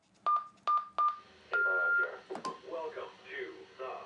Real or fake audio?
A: real